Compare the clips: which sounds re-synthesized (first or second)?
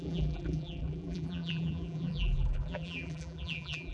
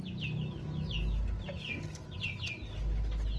first